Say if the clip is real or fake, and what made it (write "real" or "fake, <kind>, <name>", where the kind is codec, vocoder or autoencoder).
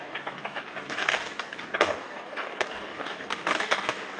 fake, codec, DAC